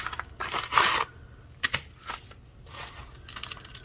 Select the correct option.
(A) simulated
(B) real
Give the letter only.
B